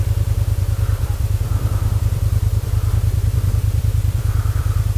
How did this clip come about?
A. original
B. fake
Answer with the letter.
B